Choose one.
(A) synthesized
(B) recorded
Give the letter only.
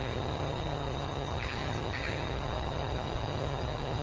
A